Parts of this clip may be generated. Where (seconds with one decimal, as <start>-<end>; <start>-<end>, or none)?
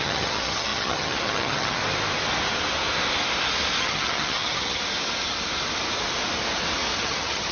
0.0-1.8; 3.8-4.8; 7.0-7.5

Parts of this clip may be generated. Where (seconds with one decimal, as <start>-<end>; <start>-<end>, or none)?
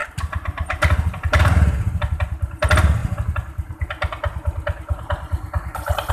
0.0-1.4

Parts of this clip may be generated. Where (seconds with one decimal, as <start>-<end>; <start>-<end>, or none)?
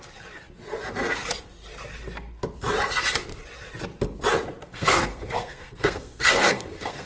4.6-7.1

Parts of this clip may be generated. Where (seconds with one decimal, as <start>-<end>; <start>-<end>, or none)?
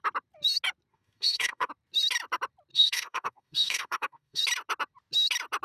0.9-1.7; 2.7-4.4